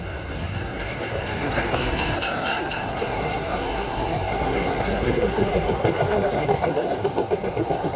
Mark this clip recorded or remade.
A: remade